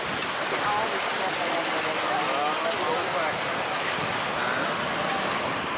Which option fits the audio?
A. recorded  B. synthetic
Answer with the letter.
A